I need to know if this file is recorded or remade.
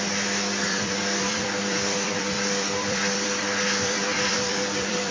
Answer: remade